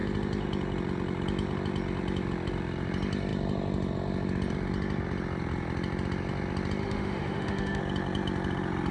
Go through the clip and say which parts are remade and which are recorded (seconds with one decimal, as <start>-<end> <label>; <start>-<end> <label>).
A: 0.0-6.8 recorded; 6.8-7.8 remade; 7.8-8.9 recorded

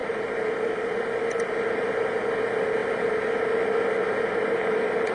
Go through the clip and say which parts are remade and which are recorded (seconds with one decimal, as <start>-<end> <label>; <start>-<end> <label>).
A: 0.0-5.1 recorded

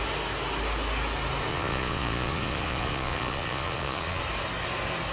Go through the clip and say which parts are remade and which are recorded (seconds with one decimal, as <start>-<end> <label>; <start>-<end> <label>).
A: 0.0-1.5 recorded; 1.5-4.2 remade; 4.2-5.1 recorded

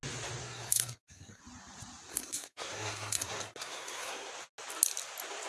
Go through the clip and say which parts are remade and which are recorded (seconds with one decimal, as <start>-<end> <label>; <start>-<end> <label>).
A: 0.0-0.4 recorded; 0.4-1.4 remade; 1.4-2.1 recorded; 2.1-4.3 remade; 4.3-5.5 recorded

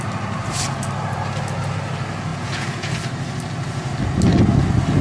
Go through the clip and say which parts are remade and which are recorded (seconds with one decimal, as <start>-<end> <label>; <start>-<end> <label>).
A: 0.0-2.3 recorded; 2.3-3.0 remade; 3.0-5.0 recorded

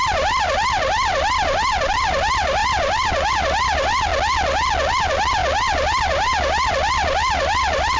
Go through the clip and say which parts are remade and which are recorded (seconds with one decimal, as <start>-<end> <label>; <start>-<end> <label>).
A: 0.0-4.1 remade; 4.1-4.9 recorded; 4.9-8.0 remade

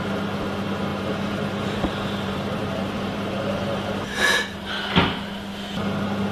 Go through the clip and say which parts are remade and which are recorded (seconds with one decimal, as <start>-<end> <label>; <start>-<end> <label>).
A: 0.0-0.9 recorded; 0.9-4.7 remade; 4.7-6.3 recorded